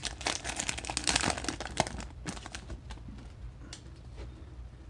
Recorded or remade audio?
recorded